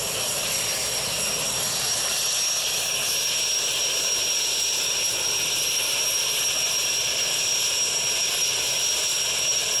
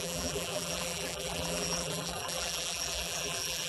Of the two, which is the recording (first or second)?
first